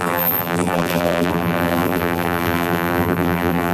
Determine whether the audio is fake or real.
fake